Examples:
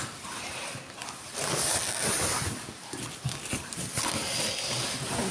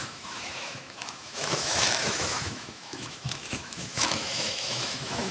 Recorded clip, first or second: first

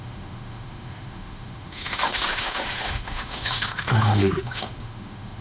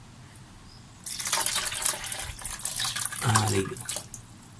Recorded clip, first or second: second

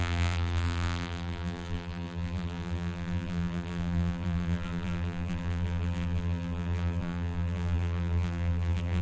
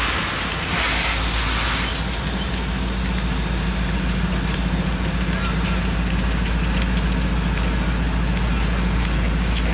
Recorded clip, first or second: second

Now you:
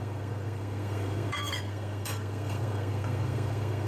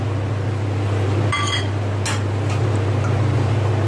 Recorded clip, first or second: second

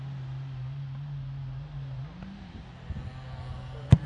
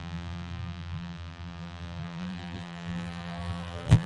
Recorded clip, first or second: first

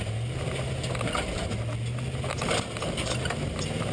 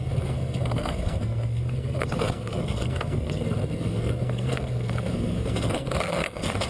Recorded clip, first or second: first